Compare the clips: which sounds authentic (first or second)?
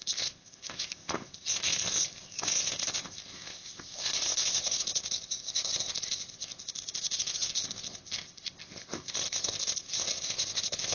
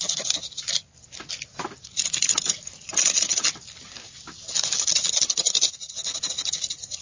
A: second